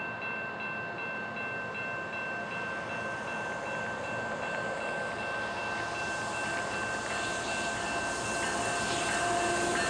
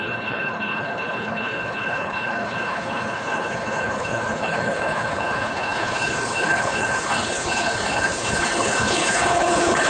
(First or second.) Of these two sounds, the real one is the first